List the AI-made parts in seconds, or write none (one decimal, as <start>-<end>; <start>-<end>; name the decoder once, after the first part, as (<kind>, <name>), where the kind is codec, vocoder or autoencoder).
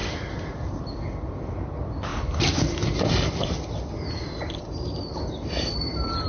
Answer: none